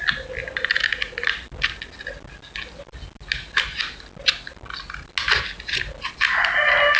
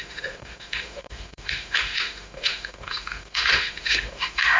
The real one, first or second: first